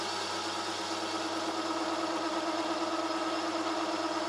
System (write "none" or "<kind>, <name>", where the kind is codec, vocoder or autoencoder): none